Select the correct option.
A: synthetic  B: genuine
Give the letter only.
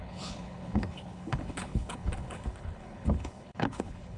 A